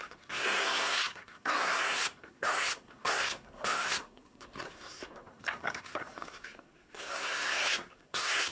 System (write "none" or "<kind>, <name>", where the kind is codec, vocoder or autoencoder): codec, SNAC